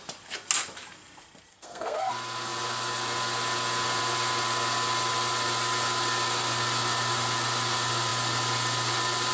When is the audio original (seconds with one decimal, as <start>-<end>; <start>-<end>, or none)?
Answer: 0.0-1.5; 2.1-9.3